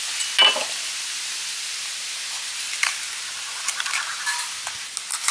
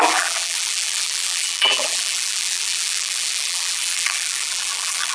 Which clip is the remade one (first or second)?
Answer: second